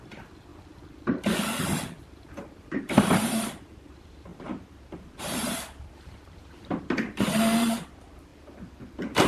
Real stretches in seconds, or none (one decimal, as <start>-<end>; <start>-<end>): 0.5-2.0; 8.3-9.3